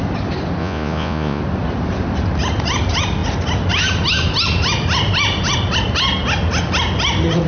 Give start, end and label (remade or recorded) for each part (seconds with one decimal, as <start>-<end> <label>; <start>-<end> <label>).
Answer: 0.0-0.6 recorded; 0.6-1.4 remade; 1.4-7.5 recorded